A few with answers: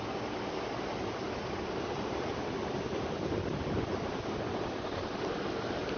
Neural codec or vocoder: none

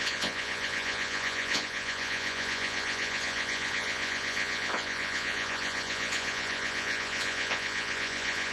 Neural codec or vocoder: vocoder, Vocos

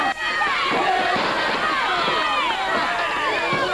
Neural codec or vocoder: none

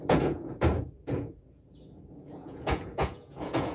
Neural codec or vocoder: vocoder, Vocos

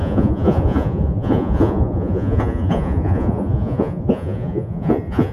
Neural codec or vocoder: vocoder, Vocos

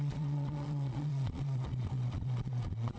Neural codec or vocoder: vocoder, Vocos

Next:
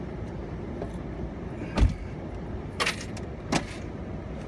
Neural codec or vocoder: none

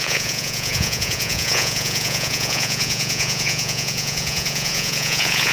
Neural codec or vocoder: vocoder, Vocos